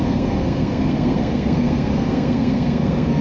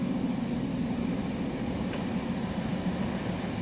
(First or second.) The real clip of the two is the second